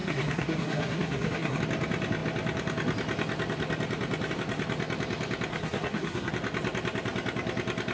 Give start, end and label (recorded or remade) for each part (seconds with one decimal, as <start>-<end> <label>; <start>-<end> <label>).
0.0-1.6 remade; 1.6-5.5 recorded; 5.5-6.3 remade; 6.3-7.9 recorded